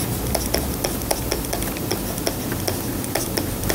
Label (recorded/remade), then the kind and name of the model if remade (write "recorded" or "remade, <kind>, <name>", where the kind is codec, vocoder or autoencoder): remade, vocoder, BigVGAN v2